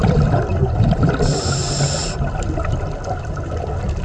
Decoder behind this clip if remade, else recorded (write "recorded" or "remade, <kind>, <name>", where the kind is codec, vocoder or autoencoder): recorded